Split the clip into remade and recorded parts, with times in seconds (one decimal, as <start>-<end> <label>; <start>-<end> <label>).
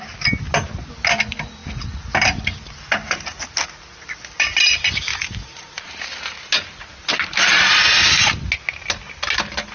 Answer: 0.0-5.1 recorded; 5.1-5.9 remade; 5.9-9.7 recorded